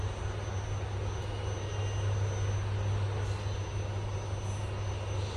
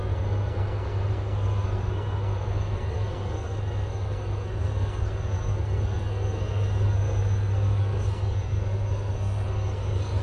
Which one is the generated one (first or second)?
second